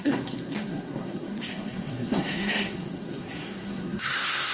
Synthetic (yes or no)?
yes